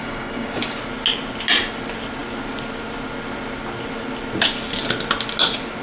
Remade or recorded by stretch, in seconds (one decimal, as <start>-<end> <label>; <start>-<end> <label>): 0.0-0.8 remade; 0.8-5.8 recorded